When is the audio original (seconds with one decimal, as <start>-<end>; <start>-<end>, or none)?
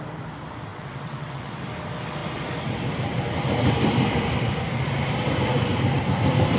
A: 0.0-0.7; 1.5-6.6